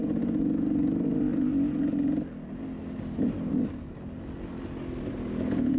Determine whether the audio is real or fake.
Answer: real